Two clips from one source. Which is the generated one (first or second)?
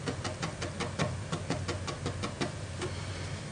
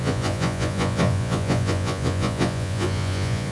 second